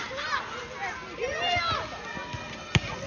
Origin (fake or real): real